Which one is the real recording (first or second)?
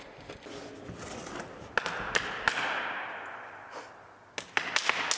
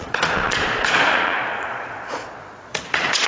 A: first